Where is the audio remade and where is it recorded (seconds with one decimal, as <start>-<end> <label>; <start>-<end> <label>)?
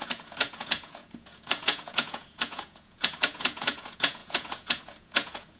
0.0-5.6 remade